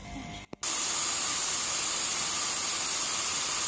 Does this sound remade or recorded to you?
recorded